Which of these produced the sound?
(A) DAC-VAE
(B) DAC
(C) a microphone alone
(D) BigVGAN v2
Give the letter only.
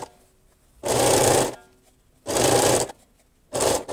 C